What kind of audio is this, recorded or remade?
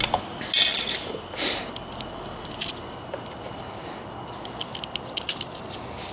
recorded